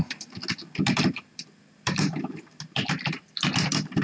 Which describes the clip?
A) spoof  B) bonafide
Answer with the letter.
B